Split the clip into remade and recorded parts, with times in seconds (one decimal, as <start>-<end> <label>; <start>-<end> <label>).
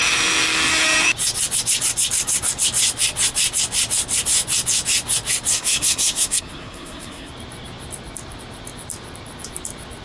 0.0-5.5 recorded; 5.5-7.3 remade; 7.3-10.0 recorded